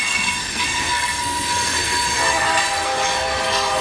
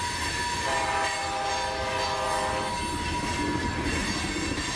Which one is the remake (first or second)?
first